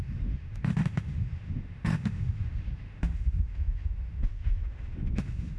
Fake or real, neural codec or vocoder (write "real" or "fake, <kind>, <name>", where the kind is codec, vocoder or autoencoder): fake, autoencoder, DAC-VAE